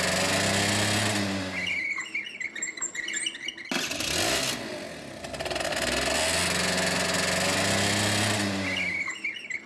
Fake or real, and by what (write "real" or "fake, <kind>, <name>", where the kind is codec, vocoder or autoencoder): real